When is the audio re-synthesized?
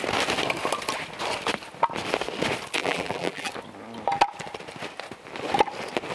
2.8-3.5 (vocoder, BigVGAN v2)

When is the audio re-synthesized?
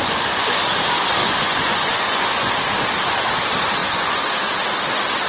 0.0-0.6 (vocoder, Vocos); 1.2-2.5; 3.8-4.4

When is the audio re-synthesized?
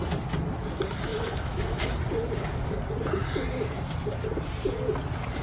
1.1-1.8 (autoencoder, DAC-VAE)